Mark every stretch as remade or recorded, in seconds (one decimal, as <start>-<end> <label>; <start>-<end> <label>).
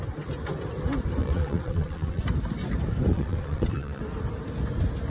0.0-1.2 recorded; 1.2-2.2 remade; 2.2-3.1 recorded; 3.1-4.0 remade; 4.0-5.1 recorded